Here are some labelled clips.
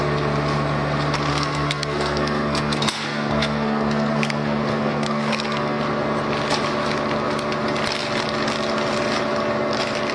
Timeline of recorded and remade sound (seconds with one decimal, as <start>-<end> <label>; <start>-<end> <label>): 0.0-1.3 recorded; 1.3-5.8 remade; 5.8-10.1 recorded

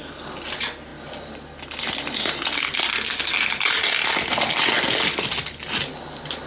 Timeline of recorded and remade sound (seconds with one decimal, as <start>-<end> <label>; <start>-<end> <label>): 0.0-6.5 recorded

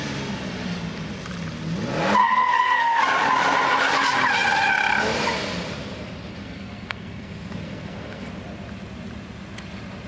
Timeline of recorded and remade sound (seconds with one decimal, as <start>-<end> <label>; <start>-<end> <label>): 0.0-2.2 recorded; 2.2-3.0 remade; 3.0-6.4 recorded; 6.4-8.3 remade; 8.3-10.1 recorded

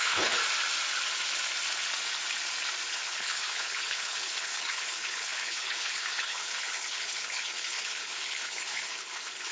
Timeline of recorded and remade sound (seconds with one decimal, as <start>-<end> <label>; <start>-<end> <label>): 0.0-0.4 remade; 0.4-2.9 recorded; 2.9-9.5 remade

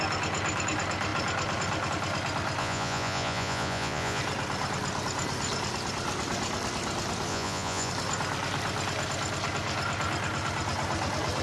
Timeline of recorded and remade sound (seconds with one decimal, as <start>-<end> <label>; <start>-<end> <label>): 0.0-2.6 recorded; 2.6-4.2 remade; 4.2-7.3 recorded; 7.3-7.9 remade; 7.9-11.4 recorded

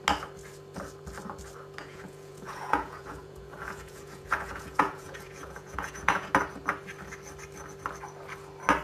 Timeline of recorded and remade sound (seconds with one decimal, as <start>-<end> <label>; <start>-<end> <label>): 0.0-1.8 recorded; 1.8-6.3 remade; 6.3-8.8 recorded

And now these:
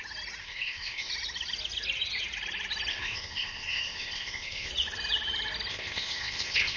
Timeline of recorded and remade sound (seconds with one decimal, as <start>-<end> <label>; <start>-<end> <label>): 0.0-0.4 recorded; 0.4-1.1 remade; 1.1-2.9 recorded; 2.9-4.7 remade; 4.7-5.7 recorded; 5.7-6.8 remade

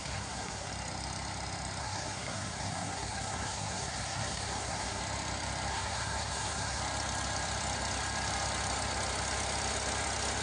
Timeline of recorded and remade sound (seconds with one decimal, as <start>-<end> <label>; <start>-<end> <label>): 0.0-0.7 remade; 0.7-1.8 recorded; 1.8-5.0 remade; 5.0-5.7 recorded; 5.7-6.8 remade; 6.8-10.4 recorded